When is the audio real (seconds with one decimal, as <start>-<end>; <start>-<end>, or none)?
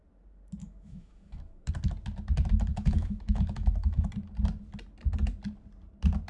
0.0-0.6; 1.7-2.7; 4.1-6.3